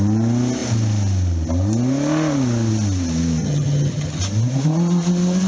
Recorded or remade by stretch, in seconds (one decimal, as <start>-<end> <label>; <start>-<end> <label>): 0.0-3.4 recorded; 3.4-4.2 remade; 4.2-5.5 recorded